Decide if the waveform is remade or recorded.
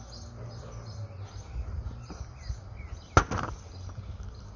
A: recorded